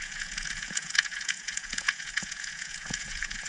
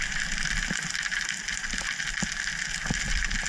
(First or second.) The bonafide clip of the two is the second